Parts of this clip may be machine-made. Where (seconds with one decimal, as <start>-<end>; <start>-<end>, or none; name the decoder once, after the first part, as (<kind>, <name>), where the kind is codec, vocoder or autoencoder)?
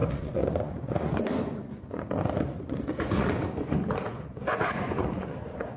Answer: 0.0-5.8 (vocoder, Vocos)